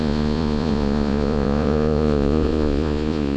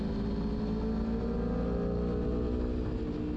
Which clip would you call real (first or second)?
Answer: second